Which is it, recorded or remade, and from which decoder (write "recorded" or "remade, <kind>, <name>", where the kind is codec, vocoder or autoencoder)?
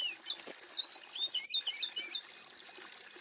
recorded